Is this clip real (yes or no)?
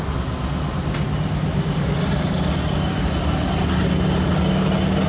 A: yes